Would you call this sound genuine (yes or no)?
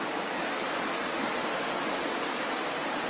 yes